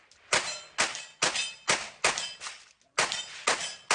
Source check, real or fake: real